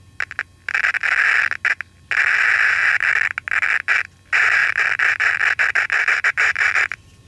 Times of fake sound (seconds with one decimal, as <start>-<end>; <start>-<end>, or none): 4.6-7.3